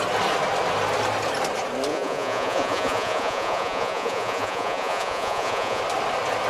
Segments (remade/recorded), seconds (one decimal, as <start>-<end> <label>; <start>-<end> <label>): 0.0-1.9 recorded; 1.9-5.8 remade; 5.8-6.5 recorded